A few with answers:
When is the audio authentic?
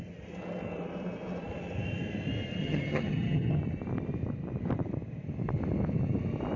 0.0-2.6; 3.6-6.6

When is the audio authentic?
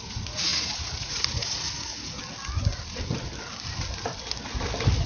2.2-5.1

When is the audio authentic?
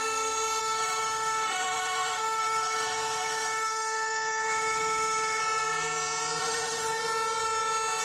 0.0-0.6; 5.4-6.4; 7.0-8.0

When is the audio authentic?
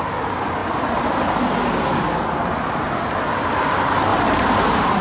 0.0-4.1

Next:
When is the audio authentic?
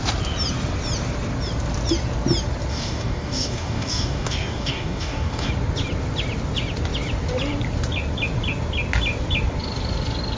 0.0-2.7; 5.5-10.4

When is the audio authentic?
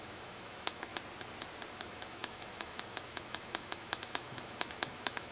0.9-1.7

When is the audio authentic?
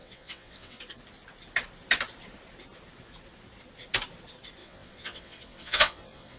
0.8-4.6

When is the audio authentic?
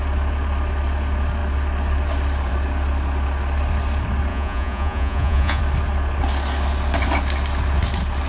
0.0-4.3; 5.6-8.3